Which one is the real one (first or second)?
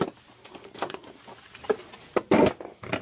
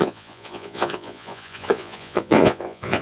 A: first